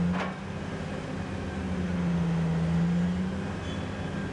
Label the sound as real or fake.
real